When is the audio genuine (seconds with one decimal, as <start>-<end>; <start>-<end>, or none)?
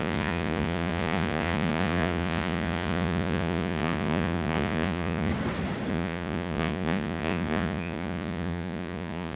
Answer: 5.3-5.9